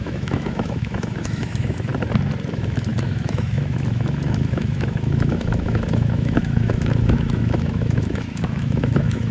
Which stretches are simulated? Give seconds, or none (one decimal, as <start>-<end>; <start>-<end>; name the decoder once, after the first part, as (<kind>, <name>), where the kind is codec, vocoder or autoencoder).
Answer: 0.0-1.9 (autoencoder, DAC-VAE); 2.5-9.3

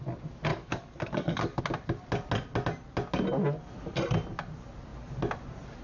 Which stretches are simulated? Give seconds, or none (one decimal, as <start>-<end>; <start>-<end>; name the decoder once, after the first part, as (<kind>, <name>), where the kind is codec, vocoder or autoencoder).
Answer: 0.5-1.6 (codec, DAC)

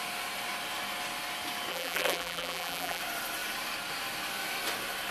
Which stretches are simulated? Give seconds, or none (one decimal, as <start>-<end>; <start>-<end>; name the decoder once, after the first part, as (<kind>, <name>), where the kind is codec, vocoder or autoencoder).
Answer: 1.7-3.0 (vocoder, BigVGAN v2)